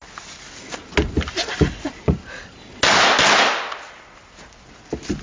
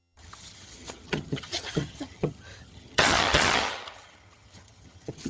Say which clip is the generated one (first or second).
second